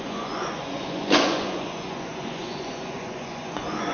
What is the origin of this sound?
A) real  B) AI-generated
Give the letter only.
B